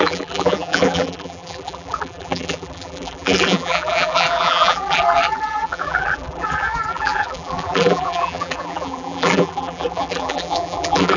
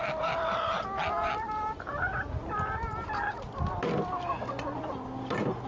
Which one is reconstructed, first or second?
first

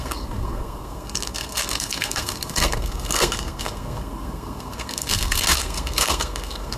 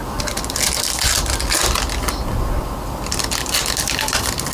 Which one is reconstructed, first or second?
first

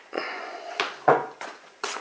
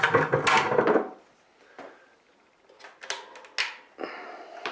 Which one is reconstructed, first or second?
first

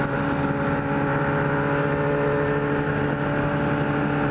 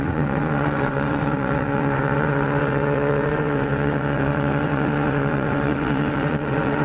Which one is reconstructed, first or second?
second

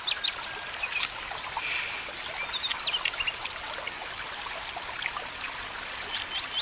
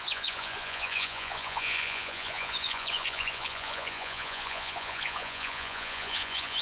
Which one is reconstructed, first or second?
second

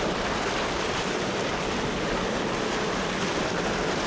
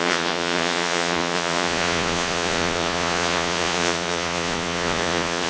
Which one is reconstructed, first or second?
second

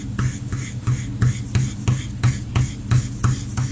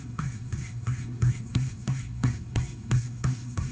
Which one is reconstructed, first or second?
second